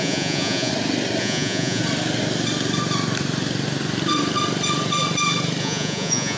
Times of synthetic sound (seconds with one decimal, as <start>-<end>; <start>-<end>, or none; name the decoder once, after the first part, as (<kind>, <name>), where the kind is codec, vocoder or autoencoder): 0.0-0.7 (vocoder, Vocos); 1.2-1.8; 5.6-6.4